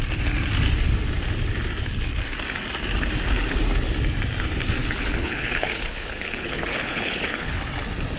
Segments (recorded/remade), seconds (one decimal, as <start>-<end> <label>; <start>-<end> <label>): 0.0-4.8 recorded; 4.8-7.6 remade; 7.6-8.2 recorded